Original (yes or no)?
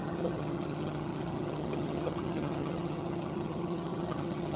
no